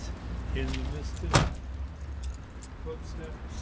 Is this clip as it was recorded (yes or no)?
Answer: yes